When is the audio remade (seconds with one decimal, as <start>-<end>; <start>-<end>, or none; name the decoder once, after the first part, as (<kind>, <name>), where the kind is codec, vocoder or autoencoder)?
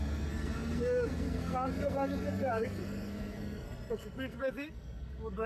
0.0-5.5 (codec, SNAC)